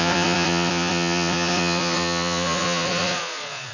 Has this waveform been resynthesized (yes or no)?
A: yes